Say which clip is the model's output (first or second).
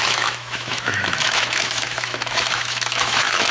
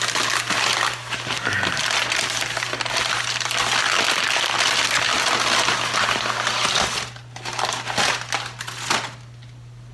first